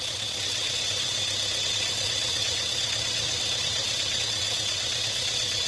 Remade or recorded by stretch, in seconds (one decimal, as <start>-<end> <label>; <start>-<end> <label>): 0.0-1.2 remade; 1.2-1.7 recorded; 1.7-5.7 remade